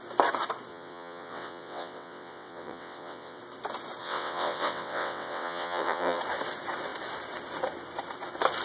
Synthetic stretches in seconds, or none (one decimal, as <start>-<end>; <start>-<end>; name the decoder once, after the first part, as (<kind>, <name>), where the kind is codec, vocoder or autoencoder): 0.7-3.4 (vocoder, WaveNeXt); 4.0-6.2